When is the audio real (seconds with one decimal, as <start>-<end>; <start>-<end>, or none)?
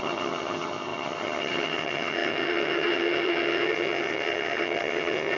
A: none